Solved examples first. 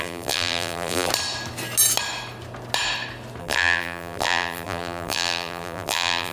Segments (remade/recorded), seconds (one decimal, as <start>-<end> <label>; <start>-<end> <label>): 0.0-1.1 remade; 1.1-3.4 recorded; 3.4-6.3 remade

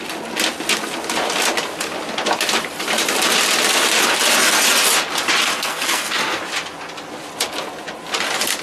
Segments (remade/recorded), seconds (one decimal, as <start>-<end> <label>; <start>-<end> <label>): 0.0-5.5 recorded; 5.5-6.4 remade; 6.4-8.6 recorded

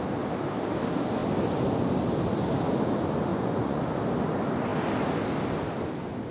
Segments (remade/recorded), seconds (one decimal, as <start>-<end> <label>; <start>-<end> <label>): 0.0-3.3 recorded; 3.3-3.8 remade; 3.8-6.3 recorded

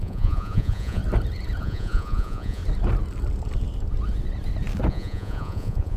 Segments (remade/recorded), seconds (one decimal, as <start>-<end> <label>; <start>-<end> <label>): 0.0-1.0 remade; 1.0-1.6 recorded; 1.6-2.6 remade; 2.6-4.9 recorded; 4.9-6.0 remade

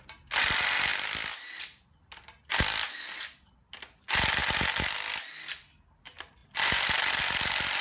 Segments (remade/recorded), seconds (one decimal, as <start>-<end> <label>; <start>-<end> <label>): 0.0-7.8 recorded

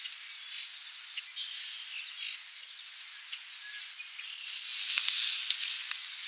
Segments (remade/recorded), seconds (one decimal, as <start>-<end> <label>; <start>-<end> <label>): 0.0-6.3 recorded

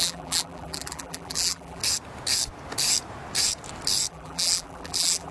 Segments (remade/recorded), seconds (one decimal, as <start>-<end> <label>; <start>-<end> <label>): 0.0-1.8 remade; 1.8-4.1 recorded; 4.1-5.3 remade